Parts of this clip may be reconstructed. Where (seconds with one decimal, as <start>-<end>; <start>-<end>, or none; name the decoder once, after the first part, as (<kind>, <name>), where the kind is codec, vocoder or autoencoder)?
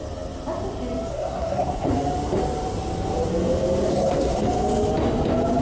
1.1-1.9 (codec, SNAC); 3.9-4.4